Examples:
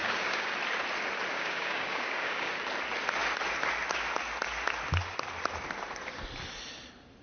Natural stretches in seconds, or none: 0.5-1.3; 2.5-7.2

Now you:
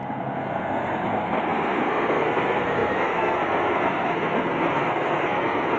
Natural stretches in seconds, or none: none